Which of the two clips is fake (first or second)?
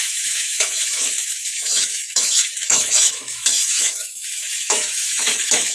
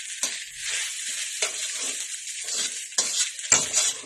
first